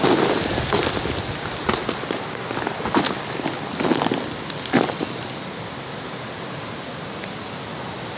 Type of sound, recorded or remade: recorded